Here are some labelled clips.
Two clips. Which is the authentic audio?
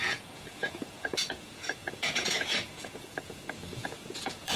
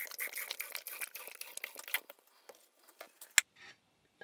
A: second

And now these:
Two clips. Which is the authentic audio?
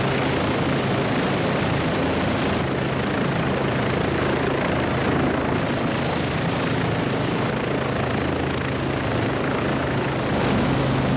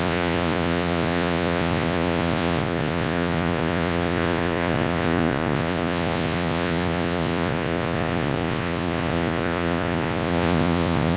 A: first